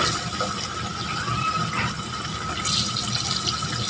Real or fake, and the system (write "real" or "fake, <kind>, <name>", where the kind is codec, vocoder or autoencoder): real